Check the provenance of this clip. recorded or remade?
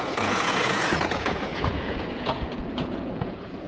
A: remade